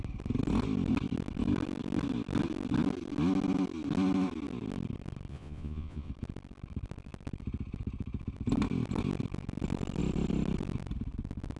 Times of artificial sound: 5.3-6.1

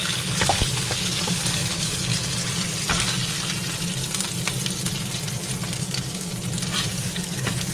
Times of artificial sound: 0.0-2.1; 5.7-6.3; 6.9-7.7

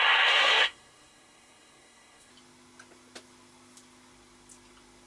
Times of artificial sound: 0.4-2.3

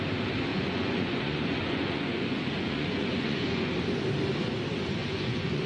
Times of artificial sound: 0.5-3.7; 5.0-5.7

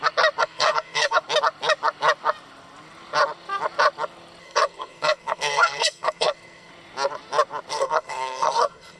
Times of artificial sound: 0.4-1.2; 4.4-6.7; 7.7-9.0

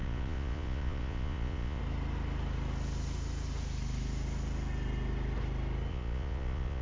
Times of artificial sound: 0.0-1.8; 5.9-6.8